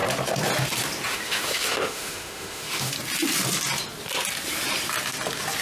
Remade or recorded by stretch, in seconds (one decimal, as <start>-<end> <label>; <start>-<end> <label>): 0.0-1.1 recorded; 1.1-2.9 remade; 2.9-5.6 recorded